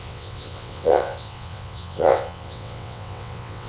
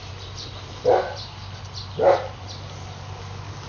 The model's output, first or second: first